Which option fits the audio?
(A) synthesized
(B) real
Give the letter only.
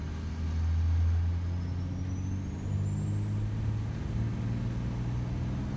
B